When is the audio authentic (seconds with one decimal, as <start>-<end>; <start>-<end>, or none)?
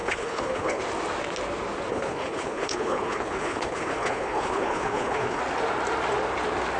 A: 0.8-1.9; 5.4-6.8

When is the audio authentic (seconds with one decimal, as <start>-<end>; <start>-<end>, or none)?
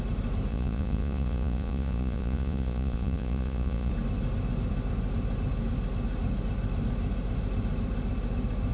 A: 0.0-0.5; 3.9-8.7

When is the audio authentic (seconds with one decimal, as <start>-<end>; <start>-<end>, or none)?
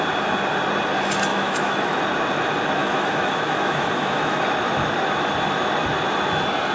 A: 0.0-1.3; 2.0-2.8; 4.4-6.7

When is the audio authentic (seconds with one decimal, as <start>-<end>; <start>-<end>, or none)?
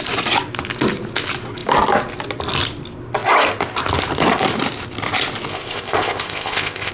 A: 0.0-5.5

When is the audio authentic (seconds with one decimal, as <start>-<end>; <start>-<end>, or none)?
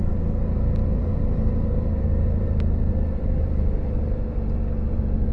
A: 0.0-0.8; 4.0-5.3